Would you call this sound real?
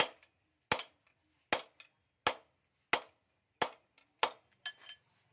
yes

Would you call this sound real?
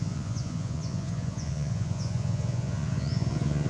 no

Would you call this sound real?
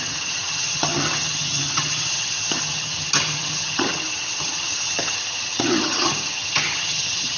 no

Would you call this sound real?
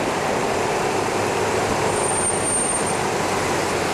yes